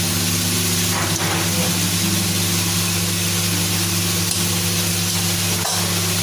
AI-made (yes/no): no